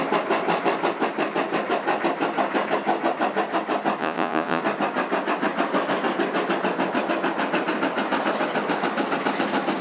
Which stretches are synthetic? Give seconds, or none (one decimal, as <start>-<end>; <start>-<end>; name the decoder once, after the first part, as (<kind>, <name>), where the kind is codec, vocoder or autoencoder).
4.0-4.6 (vocoder, Vocos)